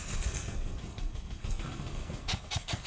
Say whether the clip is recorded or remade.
remade